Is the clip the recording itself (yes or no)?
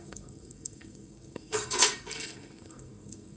no